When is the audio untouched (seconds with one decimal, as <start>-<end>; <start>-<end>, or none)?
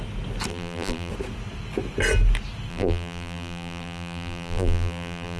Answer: 0.0-0.5; 1.1-2.7